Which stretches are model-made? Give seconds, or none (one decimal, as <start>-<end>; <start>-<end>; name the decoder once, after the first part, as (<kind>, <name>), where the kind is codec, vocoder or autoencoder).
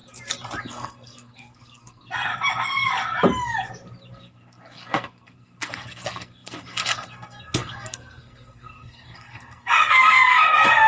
0.6-2.3 (codec, SNAC); 4.1-10.9